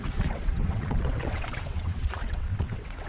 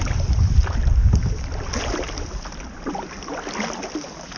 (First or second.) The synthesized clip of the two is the first